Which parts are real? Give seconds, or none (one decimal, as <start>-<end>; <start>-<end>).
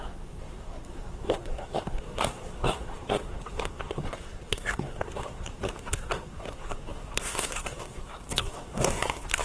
none